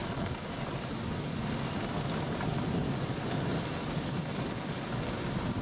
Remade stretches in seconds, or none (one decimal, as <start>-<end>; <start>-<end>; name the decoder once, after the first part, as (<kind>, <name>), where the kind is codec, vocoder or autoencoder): none